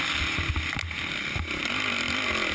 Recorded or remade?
recorded